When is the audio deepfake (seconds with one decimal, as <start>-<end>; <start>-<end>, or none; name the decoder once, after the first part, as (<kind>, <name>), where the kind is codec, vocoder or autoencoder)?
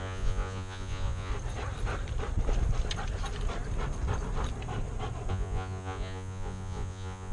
0.0-1.3 (vocoder, Vocos); 5.3-7.3